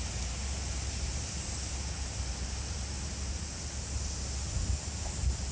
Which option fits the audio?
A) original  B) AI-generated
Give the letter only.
A